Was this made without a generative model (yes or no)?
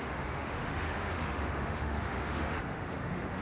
no